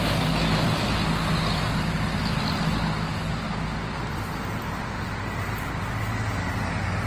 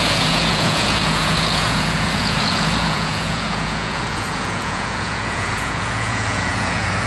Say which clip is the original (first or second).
first